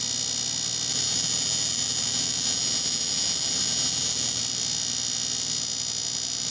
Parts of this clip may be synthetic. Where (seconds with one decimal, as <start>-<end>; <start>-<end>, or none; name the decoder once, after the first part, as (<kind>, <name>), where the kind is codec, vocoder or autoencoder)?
0.9-4.4 (vocoder, BigVGAN v2)